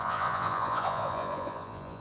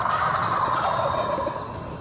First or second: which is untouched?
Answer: second